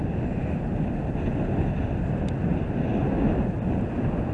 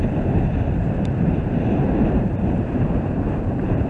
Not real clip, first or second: second